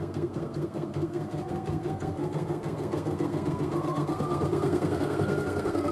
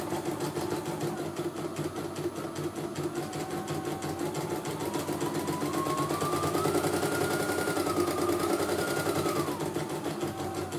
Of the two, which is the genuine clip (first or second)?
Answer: second